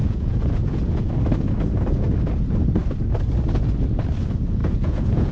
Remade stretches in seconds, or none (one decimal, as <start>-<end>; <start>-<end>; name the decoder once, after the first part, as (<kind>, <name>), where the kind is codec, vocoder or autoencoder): 0.0-1.1 (vocoder, Vocos); 4.6-5.3

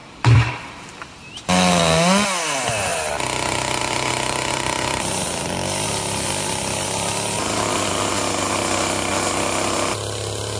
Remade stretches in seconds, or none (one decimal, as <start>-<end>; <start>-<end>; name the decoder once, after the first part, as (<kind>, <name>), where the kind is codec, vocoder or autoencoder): 0.0-0.5 (vocoder, BigVGAN v2); 2.9-8.1

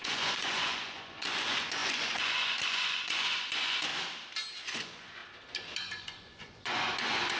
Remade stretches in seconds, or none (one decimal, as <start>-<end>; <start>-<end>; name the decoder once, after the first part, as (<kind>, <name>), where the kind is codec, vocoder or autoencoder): 0.0-3.9 (vocoder, Vocos); 4.6-5.2; 6.0-7.4

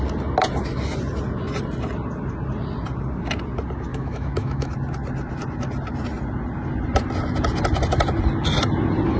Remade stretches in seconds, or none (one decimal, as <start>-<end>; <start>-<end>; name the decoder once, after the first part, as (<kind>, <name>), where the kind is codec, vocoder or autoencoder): 3.9-4.7 (autoencoder, DAC-VAE)

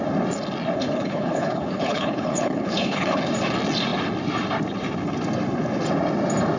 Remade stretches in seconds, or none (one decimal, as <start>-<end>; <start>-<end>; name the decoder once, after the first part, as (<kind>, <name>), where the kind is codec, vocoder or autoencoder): 0.8-3.2 (codec, HILCodec)

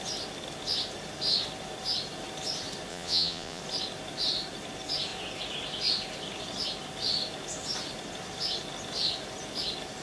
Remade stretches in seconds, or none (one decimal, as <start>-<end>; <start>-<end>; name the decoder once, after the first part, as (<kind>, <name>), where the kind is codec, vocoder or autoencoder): 2.9-3.6 (vocoder, Vocos)

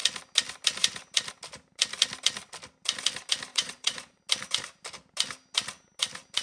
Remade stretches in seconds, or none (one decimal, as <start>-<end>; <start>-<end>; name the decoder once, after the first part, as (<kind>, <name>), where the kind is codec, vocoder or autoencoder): 3.5-4.2 (vocoder, Vocos)

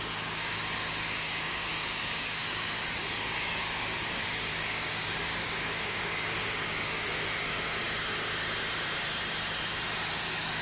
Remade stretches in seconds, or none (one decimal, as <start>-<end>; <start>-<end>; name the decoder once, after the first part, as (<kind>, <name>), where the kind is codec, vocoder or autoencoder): 0.0-7.7 (codec, DAC); 10.1-10.6